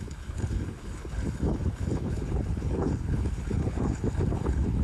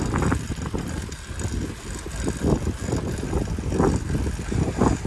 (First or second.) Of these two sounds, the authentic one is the second